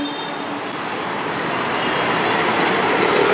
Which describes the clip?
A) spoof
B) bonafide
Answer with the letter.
B